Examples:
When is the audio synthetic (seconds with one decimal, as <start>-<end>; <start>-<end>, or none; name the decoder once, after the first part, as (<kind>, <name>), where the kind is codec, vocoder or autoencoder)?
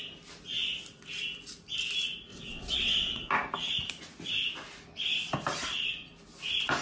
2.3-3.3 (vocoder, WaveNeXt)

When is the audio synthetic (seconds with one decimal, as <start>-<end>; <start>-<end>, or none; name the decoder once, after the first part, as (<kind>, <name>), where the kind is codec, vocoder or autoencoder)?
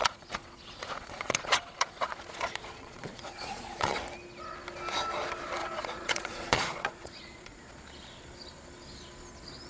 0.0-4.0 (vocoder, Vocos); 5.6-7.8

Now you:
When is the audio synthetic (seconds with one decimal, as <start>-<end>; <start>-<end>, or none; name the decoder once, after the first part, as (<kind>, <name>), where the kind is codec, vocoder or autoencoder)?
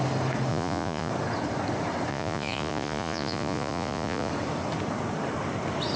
0.5-1.1 (vocoder, Vocos); 2.1-4.3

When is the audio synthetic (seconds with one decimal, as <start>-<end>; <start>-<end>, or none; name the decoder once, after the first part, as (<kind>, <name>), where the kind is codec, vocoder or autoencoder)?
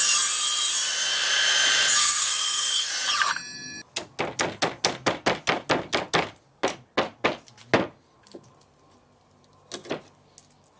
2.0-2.9 (codec, SNAC)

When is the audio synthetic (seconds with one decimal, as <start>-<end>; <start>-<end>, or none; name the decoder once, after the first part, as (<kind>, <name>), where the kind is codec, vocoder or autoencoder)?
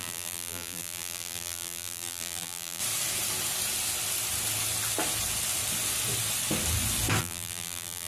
0.0-2.8 (vocoder, BigVGAN v2); 7.2-8.1